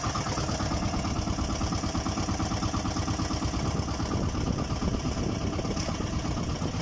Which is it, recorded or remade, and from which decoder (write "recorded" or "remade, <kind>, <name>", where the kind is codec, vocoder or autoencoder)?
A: recorded